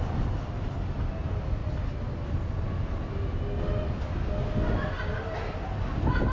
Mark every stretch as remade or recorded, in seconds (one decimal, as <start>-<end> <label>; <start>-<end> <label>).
0.0-6.3 recorded